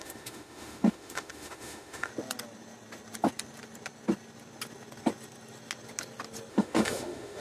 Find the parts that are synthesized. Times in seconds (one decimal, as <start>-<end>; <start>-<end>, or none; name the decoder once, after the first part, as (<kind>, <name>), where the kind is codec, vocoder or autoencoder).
0.0-2.1 (autoencoder, DAC-VAE); 6.5-7.4